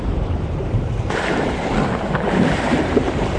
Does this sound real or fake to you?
fake